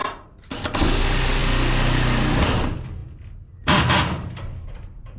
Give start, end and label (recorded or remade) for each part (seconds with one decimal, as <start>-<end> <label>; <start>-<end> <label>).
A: 0.0-5.2 recorded